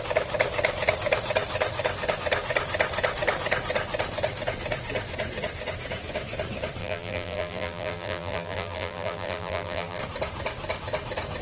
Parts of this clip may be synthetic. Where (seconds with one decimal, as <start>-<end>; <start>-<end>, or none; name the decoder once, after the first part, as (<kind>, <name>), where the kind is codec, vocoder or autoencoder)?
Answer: 6.8-10.0 (vocoder, BigVGAN v2)